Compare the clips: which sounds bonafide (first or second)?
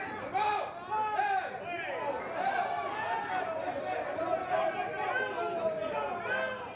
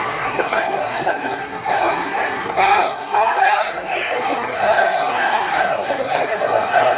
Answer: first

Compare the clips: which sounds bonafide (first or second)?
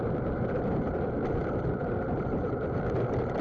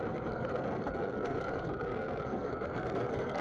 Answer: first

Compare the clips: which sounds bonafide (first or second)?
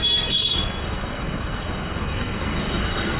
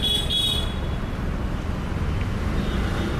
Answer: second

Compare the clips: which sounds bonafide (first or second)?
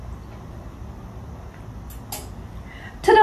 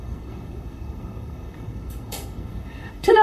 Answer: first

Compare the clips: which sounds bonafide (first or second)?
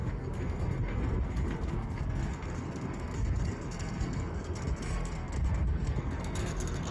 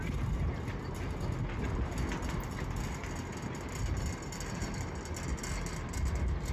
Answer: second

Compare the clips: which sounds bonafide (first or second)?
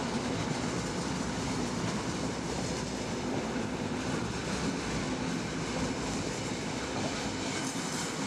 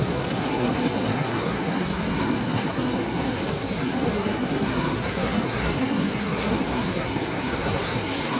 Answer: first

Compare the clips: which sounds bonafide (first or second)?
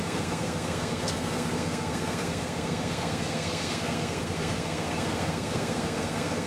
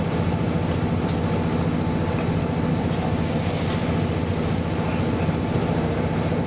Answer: second